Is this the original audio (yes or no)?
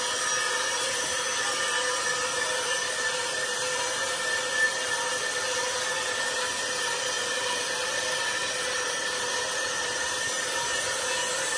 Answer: yes